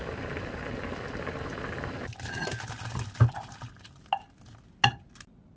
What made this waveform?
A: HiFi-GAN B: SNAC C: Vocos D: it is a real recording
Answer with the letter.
D